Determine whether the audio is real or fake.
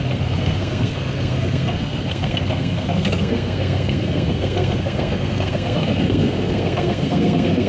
fake